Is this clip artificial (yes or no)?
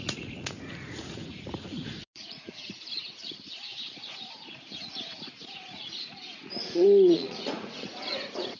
yes